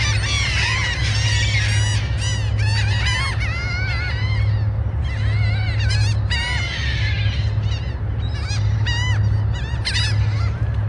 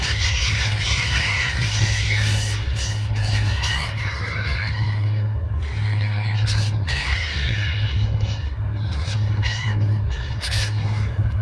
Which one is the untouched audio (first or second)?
first